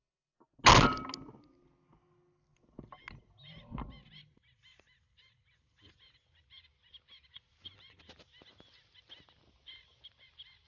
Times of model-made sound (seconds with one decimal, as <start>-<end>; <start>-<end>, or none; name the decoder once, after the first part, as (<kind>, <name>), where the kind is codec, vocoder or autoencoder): none